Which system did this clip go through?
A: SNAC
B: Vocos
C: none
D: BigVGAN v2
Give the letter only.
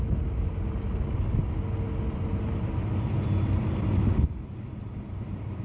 C